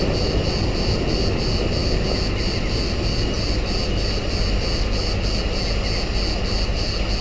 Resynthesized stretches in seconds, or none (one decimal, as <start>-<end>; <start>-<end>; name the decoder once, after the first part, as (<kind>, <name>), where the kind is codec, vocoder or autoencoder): none